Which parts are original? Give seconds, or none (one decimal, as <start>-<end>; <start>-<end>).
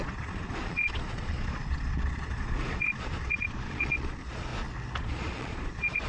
4.5-5.0